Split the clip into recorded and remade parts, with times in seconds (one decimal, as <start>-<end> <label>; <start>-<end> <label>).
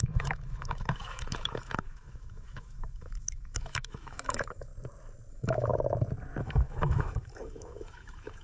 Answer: 0.0-4.7 remade; 4.7-5.3 recorded; 5.3-5.7 remade; 5.7-6.4 recorded; 6.4-8.4 remade